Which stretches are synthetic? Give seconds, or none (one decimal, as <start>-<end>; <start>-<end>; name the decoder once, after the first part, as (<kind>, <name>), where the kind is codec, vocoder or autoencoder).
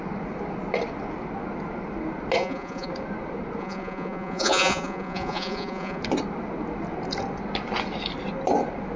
2.4-2.9 (vocoder, Vocos); 3.6-6.0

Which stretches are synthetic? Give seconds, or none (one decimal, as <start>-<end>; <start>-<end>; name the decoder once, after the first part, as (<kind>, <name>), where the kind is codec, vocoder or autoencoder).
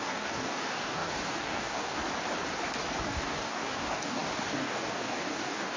0.0-2.0 (codec, DAC); 3.0-5.8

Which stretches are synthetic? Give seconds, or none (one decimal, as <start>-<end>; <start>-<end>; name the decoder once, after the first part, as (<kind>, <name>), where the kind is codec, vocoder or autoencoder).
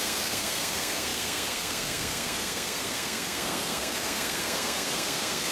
0.0-5.5 (codec, SNAC)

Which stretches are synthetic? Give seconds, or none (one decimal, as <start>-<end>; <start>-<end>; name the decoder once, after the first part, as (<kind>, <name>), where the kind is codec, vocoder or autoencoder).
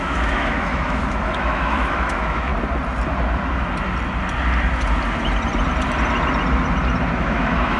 0.0-2.5 (autoencoder, DAC-VAE); 7.2-7.8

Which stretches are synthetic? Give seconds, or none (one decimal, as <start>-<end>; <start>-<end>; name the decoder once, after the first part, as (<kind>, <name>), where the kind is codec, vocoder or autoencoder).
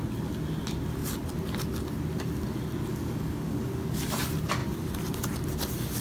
2.9-3.7 (codec, DAC)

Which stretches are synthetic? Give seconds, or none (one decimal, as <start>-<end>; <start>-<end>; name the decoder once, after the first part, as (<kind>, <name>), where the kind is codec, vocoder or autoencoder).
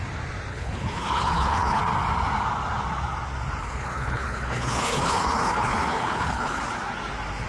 0.5-1.8 (codec, HILCodec); 3.6-6.6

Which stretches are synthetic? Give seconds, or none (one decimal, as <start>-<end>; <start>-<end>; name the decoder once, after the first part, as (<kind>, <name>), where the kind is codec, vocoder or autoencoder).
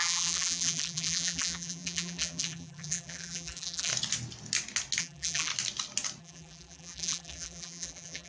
0.0-3.9 (vocoder, BigVGAN v2); 5.0-5.5; 6.2-8.3